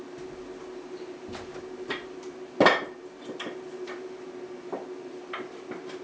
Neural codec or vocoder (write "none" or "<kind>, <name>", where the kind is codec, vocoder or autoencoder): none